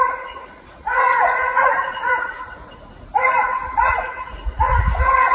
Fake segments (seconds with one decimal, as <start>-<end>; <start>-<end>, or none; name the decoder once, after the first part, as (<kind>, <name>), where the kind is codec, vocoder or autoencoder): 0.0-5.3 (vocoder, Vocos)